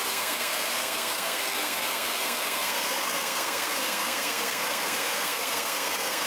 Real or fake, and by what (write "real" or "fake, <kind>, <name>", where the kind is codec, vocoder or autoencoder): fake, codec, SNAC